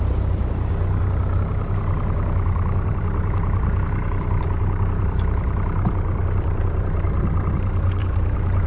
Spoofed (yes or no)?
yes